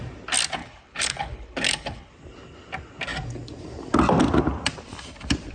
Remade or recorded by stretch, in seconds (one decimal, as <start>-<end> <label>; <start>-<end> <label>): 0.0-0.6 recorded; 0.6-2.1 remade; 2.1-5.5 recorded